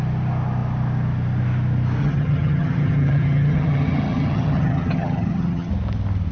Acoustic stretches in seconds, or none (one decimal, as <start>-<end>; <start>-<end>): 0.0-2.0; 5.7-6.3